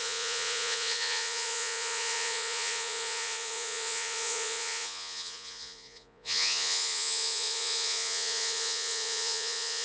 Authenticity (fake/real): fake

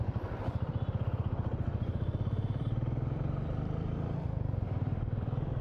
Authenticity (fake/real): fake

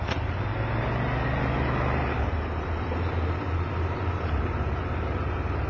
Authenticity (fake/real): real